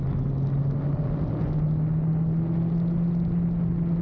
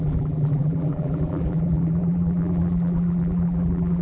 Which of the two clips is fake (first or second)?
second